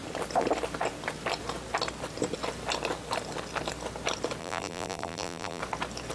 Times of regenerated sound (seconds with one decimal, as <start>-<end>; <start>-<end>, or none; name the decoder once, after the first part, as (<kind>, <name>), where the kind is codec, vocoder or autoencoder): 4.4-5.6 (vocoder, BigVGAN v2)